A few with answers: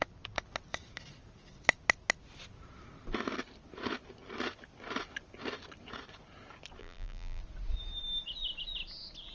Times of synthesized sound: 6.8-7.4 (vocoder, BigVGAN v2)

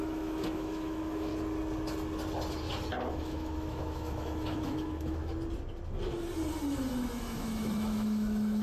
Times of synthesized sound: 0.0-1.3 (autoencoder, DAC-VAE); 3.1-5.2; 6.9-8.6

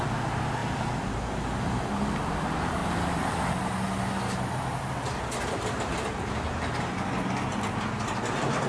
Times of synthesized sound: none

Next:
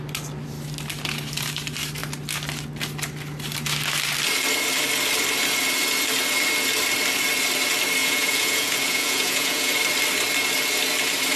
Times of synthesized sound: 8.0-9.7 (vocoder, Vocos)

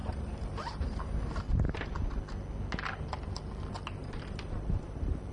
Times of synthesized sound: 0.0-1.2 (vocoder, BigVGAN v2); 4.0-5.3

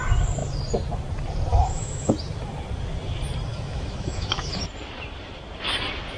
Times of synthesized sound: 1.5-2.1 (autoencoder, DAC-VAE); 3.5-4.6

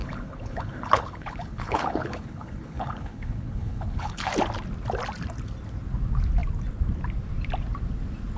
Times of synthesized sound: 0.0-4.3 (codec, HILCodec)

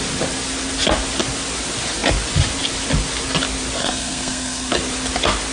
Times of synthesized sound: 3.8-4.7 (codec, SNAC)